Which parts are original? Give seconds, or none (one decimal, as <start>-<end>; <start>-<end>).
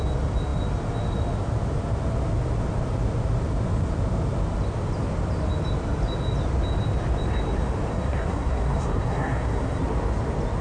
0.0-7.9; 9.8-10.6